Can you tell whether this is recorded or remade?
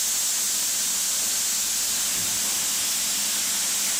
recorded